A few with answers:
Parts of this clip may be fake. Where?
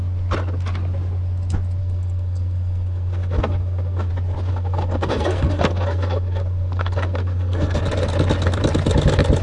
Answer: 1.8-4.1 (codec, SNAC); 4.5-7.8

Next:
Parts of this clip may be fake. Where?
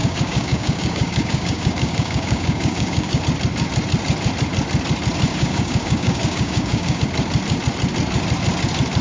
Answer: 0.0-3.2 (codec, DAC); 5.3-7.0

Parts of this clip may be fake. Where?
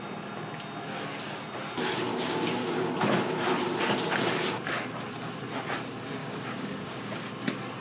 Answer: 2.1-2.9 (codec, DAC); 6.2-7.3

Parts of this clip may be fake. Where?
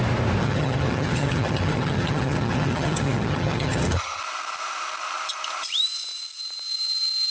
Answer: 0.4-4.2 (vocoder, HiFi-GAN)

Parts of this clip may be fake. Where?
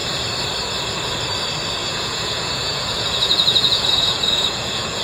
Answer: 1.8-5.0 (vocoder, Vocos)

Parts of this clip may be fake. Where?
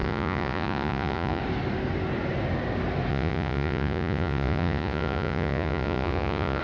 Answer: 0.0-1.4 (vocoder, Vocos); 3.1-6.6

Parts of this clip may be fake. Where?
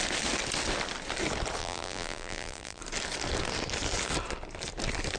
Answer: 1.6-2.8 (vocoder, BigVGAN v2)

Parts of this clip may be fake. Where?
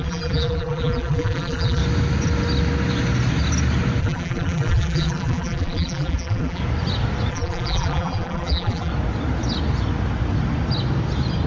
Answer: 0.0-1.8 (vocoder, BigVGAN v2); 4.0-6.6; 7.3-8.9